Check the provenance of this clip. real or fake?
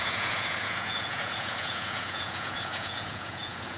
fake